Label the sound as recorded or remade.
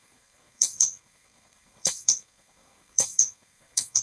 remade